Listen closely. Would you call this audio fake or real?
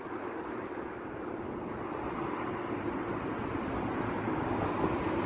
real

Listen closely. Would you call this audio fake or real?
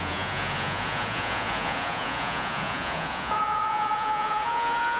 fake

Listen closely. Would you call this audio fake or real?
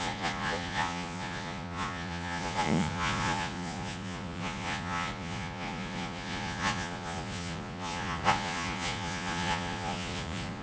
fake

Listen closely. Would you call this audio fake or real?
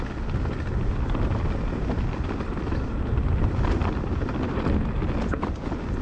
real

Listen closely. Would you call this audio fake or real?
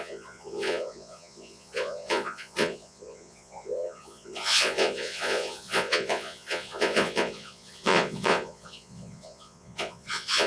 fake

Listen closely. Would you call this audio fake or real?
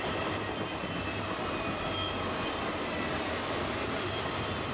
real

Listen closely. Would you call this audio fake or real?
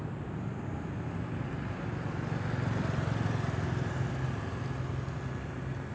real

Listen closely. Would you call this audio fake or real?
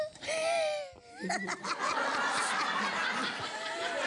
fake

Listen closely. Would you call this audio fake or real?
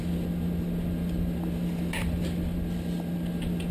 real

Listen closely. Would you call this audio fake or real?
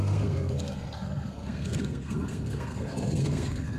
fake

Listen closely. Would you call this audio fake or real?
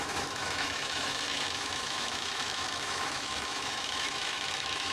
fake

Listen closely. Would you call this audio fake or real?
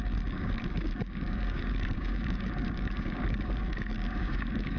fake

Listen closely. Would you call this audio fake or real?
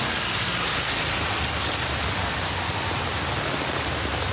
real